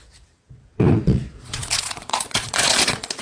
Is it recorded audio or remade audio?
remade